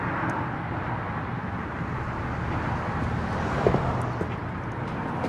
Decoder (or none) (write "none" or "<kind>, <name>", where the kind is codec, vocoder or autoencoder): none